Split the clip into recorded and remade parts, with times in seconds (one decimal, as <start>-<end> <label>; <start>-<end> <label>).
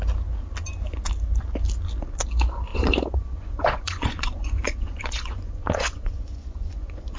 0.0-2.7 recorded; 2.7-7.2 remade